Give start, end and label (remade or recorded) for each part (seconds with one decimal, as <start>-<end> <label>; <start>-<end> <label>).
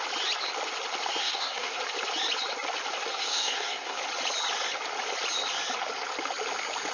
0.0-1.2 recorded; 1.2-1.8 remade; 1.8-3.1 recorded; 3.1-4.0 remade; 4.0-6.9 recorded